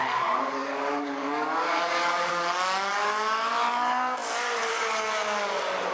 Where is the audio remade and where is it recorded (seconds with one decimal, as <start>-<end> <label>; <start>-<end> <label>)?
0.0-5.9 remade